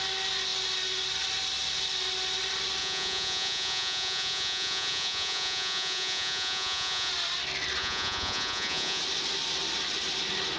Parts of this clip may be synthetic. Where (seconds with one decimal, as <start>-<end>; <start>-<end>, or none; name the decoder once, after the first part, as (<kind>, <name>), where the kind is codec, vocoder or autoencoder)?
2.8-7.1 (vocoder, Vocos); 7.8-9.0